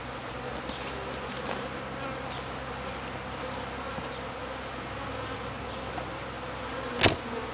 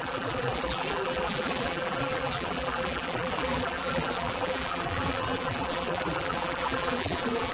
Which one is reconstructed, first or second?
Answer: second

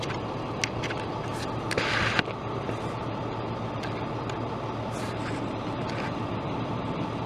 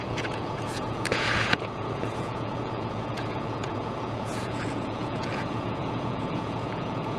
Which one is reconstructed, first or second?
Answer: second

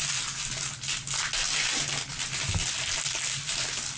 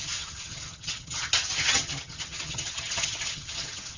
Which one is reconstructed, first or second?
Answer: second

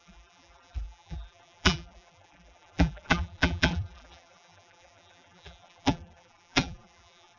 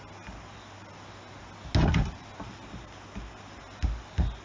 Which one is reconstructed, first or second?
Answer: first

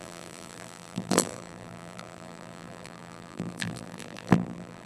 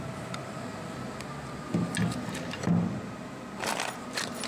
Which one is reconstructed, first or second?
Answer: first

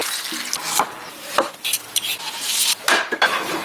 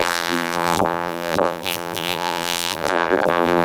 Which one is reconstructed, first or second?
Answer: second